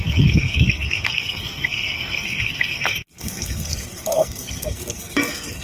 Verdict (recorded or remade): remade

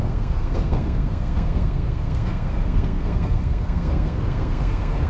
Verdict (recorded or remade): remade